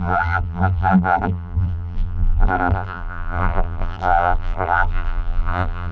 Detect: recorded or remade remade